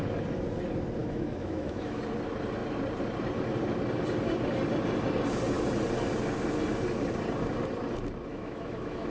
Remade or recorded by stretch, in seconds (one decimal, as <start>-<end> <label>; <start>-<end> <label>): 0.0-1.0 recorded; 1.0-2.0 remade; 2.0-8.3 recorded; 8.3-9.1 remade